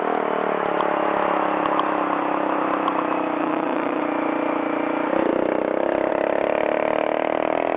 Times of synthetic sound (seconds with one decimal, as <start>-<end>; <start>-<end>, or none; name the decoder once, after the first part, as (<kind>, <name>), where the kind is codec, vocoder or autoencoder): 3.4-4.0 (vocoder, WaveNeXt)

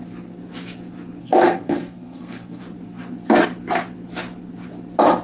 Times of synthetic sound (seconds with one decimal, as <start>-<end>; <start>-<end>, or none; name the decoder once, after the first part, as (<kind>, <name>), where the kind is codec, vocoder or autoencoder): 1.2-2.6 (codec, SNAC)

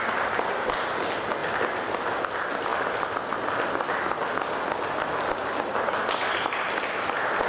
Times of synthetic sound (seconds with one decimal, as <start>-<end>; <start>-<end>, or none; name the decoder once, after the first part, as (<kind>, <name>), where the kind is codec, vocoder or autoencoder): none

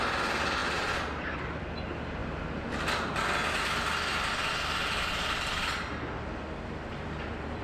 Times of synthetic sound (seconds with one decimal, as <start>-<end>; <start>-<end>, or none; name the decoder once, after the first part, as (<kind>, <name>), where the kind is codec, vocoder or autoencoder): none

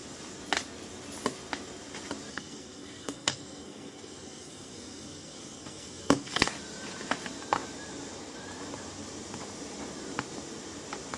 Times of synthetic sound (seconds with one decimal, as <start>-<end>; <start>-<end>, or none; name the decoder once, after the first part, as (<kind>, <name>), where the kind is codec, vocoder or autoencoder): 2.3-6.5 (codec, SNAC)

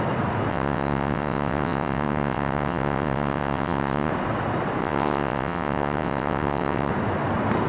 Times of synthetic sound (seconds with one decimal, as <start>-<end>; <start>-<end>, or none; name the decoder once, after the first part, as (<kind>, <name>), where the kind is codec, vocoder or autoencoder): 0.5-4.1 (vocoder, WaveNeXt); 4.8-6.9